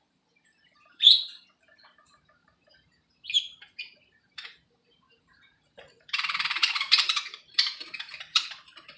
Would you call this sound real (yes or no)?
no